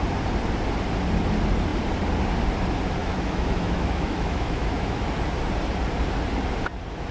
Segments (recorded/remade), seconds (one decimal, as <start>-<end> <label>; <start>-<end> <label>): 0.0-3.0 recorded; 3.0-5.1 remade; 5.1-7.1 recorded